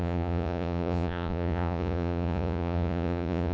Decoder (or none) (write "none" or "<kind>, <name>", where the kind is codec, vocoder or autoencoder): vocoder, Vocos